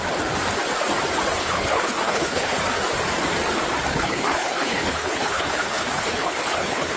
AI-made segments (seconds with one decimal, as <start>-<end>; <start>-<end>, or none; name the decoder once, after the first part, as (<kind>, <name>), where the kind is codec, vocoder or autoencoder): 1.4-2.6 (codec, HILCodec); 3.9-7.0